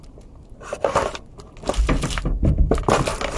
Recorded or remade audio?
recorded